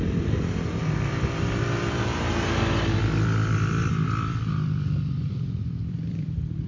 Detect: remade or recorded remade